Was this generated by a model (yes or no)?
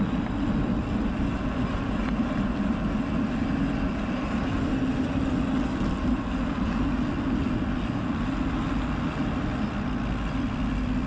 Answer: no